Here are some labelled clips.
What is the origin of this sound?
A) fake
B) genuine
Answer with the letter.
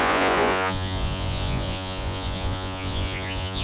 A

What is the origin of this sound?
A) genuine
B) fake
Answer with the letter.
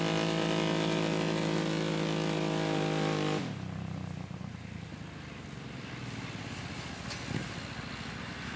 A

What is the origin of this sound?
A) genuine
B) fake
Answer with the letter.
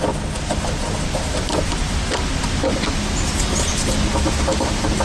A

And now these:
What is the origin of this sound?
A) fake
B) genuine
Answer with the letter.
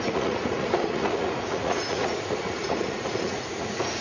A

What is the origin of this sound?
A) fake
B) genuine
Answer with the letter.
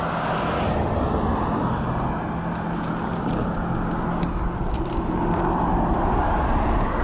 B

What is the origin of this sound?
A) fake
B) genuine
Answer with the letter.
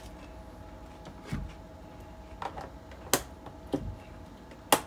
B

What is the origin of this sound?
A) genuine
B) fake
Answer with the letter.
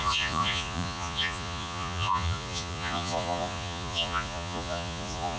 B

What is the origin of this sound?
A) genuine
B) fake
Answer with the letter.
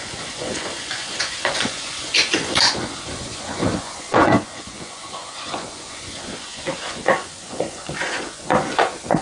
B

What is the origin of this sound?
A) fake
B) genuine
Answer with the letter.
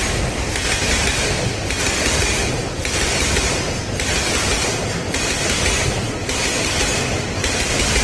B